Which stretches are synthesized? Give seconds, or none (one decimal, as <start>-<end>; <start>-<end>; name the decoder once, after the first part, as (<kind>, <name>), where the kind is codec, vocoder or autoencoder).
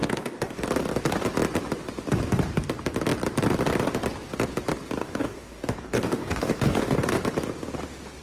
0.0-0.6 (codec, DAC); 5.0-7.2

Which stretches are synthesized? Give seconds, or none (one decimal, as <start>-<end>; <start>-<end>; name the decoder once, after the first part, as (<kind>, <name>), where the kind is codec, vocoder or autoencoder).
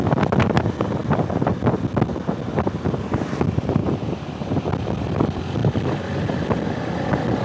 0.0-1.0 (vocoder, BigVGAN v2); 3.2-3.8; 4.6-7.4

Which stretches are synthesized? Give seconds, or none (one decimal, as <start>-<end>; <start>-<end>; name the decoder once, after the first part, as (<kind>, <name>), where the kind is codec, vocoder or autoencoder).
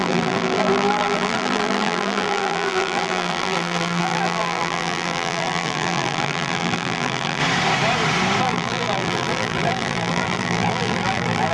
0.0-7.4 (vocoder, BigVGAN v2); 8.4-11.5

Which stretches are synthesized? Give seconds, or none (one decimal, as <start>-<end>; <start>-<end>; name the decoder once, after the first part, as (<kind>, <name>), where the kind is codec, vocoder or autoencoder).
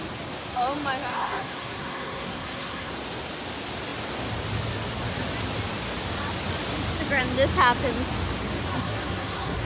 1.1-2.9 (codec, SNAC); 8.7-9.6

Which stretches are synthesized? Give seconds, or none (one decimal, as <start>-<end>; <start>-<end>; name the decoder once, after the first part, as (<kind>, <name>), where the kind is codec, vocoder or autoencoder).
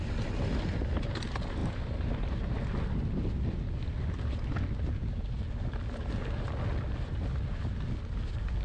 none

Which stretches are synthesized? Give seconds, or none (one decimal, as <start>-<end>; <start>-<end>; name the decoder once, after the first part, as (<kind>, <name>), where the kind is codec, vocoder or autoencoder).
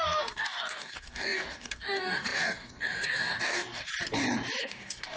0.0-3.9 (codec, DAC); 4.6-5.2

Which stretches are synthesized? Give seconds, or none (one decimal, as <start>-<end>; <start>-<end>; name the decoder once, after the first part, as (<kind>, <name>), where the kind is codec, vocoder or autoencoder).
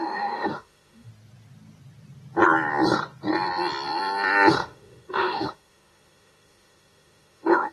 0.0-1.1 (autoencoder, DAC-VAE); 4.5-7.7